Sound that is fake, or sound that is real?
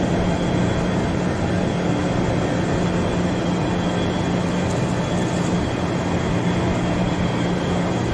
real